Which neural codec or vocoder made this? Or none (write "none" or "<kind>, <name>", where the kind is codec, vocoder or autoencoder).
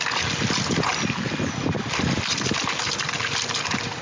none